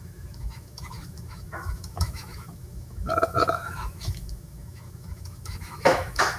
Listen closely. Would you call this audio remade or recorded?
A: remade